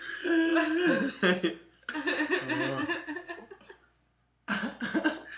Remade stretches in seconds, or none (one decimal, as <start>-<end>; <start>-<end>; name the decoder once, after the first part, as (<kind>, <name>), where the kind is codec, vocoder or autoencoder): 2.8-3.5 (vocoder, Vocos)